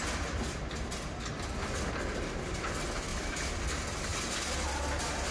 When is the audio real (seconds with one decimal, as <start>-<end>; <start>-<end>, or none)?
0.0-3.1; 3.6-5.3